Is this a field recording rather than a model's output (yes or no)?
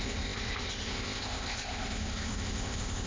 no